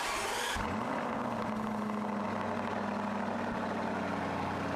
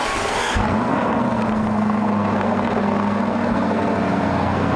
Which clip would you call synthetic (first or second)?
second